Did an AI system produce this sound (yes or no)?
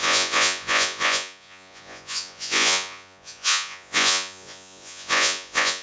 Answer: yes